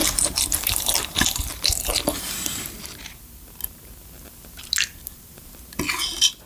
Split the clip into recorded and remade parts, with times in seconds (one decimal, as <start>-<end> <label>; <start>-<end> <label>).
0.0-3.9 remade; 3.9-6.5 recorded